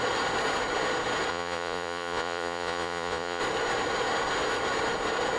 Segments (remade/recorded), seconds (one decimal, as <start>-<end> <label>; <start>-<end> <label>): 0.0-1.3 recorded; 1.3-3.4 remade; 3.4-5.4 recorded